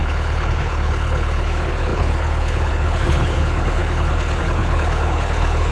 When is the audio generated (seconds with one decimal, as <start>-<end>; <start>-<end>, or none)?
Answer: 0.0-5.7